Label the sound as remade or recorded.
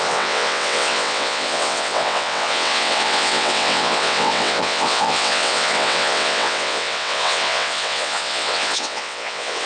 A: remade